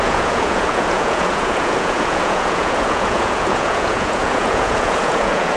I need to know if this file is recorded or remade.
remade